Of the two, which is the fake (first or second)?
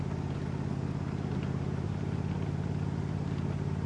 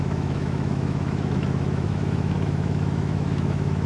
second